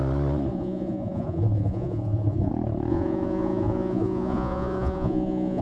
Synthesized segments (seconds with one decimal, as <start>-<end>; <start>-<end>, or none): 0.5-2.5; 2.9-5.6